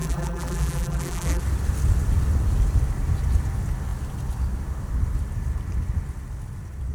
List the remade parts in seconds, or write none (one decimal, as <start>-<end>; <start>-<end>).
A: 0.0-1.4